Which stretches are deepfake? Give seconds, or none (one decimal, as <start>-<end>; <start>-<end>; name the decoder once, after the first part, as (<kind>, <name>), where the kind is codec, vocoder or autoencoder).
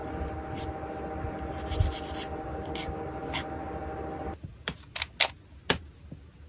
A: none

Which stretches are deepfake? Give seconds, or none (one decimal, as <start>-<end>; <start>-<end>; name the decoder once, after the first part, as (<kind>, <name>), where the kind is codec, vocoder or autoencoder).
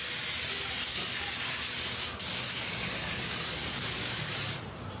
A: 0.9-1.7 (codec, DAC); 2.3-4.3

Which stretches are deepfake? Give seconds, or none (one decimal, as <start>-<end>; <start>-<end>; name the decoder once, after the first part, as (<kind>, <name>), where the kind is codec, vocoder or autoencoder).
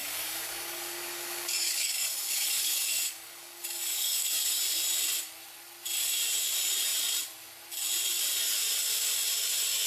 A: 0.0-4.6 (codec, DAC)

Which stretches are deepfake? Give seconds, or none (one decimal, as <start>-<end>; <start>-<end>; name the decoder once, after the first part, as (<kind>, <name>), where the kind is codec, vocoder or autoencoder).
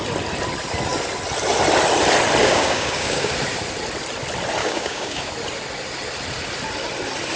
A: 2.4-3.3 (codec, DAC); 4.6-5.3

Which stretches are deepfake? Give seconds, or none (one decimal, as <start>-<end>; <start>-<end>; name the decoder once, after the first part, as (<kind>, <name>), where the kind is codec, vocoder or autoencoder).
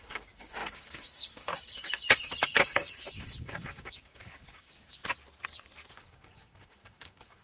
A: 0.0-5.0 (codec, DAC); 6.0-7.4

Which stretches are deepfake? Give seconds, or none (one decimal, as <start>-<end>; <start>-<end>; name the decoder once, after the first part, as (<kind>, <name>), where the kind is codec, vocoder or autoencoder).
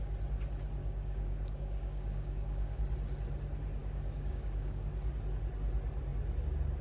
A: 0.8-2.8 (codec, DAC); 3.8-4.9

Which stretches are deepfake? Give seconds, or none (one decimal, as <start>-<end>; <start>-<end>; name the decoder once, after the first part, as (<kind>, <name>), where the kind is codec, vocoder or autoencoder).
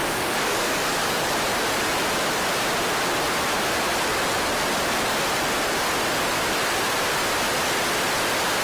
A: 0.0-1.3 (codec, DAC)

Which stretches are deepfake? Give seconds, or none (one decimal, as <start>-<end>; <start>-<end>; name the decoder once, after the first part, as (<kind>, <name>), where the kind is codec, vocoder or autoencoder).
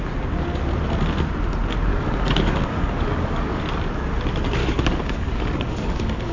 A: 1.9-3.6 (codec, DAC); 4.6-6.3